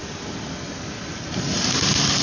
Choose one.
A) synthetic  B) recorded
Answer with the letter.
B